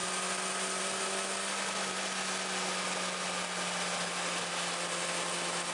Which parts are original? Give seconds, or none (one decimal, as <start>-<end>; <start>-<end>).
0.0-5.7